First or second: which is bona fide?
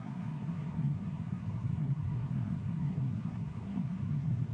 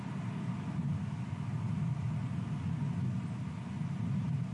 second